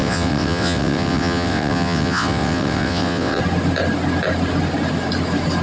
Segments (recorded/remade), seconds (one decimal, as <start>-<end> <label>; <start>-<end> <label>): 0.0-3.4 remade; 3.4-5.6 recorded